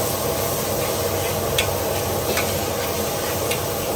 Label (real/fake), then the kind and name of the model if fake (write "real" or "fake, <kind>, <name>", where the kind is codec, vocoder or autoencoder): real